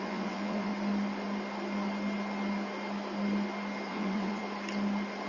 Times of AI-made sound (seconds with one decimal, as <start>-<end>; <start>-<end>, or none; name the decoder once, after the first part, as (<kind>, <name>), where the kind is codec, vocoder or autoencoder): 0.0-0.7 (vocoder, WaveNeXt); 3.9-4.4